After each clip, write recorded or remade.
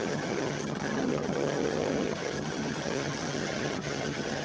remade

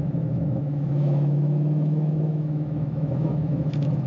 remade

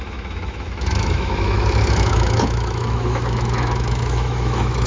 remade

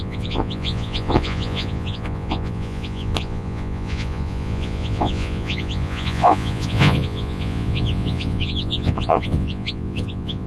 remade